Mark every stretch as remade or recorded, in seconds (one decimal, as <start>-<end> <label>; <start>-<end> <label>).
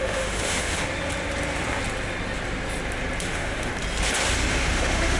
0.0-0.8 remade; 0.8-3.2 recorded; 3.2-3.7 remade; 3.7-4.5 recorded; 4.5-5.2 remade